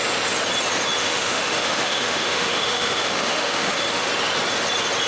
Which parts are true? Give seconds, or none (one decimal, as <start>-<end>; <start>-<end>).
0.0-1.0; 4.1-5.1